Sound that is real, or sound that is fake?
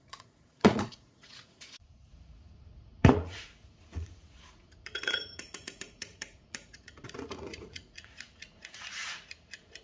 fake